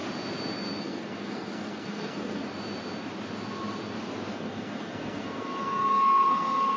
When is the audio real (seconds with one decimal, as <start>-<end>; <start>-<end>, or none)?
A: 0.0-0.8; 2.4-4.3